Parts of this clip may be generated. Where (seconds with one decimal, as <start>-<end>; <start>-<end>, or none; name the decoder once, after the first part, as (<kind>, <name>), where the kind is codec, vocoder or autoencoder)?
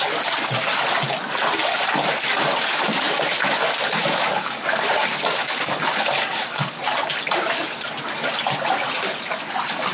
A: 4.0-4.9 (codec, DAC); 5.4-6.8